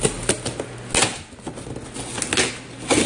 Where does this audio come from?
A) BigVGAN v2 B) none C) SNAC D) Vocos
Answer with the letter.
B